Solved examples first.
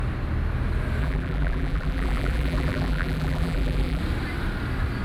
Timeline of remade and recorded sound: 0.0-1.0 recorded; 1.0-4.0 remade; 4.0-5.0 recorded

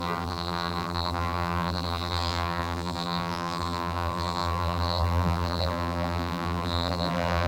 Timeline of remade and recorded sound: 0.0-7.5 remade

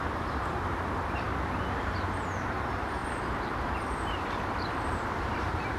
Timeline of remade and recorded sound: 0.0-1.3 remade; 1.3-2.5 recorded; 2.5-5.8 remade

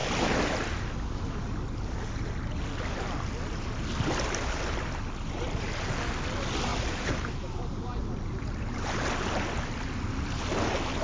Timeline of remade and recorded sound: 0.0-6.7 recorded; 6.7-9.0 remade; 9.0-11.0 recorded